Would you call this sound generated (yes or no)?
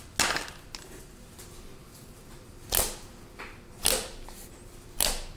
no